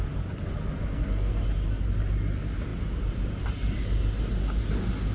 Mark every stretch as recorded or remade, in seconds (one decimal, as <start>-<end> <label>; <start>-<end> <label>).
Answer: 0.0-0.9 recorded; 0.9-1.4 remade; 1.4-5.1 recorded